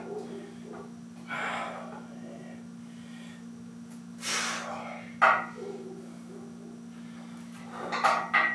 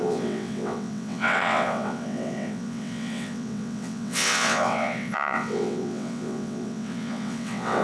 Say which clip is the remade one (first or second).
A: second